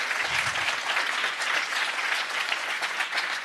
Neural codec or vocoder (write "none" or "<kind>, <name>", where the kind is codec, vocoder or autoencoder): vocoder, Vocos